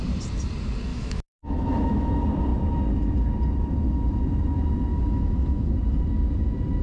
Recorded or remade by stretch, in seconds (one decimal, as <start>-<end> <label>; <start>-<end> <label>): 0.0-0.9 recorded; 0.9-2.1 remade; 2.1-4.9 recorded; 4.9-5.7 remade; 5.7-6.8 recorded